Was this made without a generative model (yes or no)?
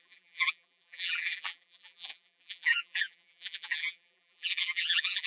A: no